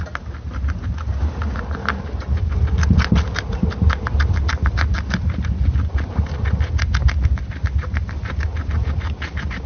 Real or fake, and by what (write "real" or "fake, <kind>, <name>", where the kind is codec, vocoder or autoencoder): real